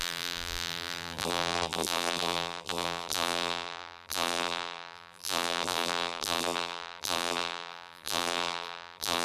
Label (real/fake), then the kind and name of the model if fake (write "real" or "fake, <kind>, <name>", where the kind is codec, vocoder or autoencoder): fake, vocoder, BigVGAN v2